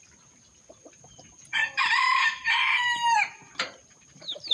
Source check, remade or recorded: remade